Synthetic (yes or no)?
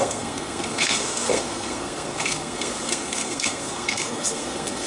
yes